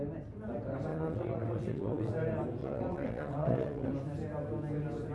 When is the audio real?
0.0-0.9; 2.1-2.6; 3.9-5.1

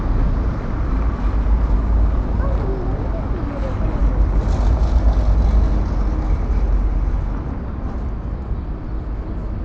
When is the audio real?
0.0-9.6

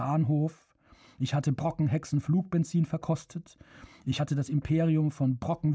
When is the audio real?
0.0-3.7; 4.2-5.7

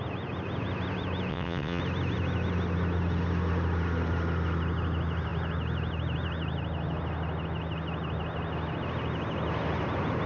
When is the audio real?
0.0-1.3; 1.8-10.3

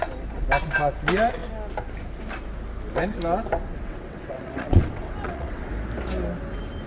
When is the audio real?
0.0-3.6; 5.7-6.9